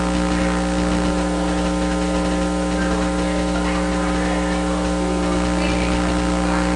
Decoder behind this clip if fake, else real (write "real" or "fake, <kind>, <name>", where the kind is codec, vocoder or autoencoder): real